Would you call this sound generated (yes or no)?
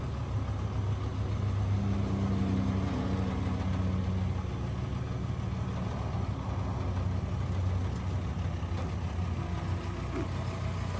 no